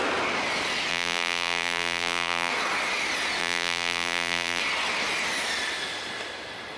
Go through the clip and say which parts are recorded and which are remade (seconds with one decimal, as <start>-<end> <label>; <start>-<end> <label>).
0.0-0.9 recorded; 0.9-2.5 remade; 2.5-3.4 recorded; 3.4-4.6 remade; 4.6-6.8 recorded